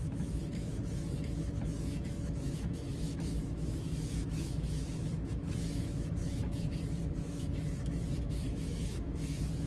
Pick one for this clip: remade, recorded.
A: remade